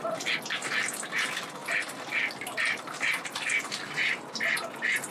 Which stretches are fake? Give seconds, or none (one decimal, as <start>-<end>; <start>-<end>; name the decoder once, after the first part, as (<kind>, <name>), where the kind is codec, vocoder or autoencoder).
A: 1.6-5.1 (vocoder, BigVGAN v2)